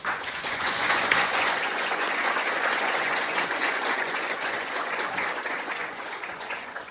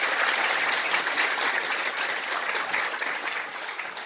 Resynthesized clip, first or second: first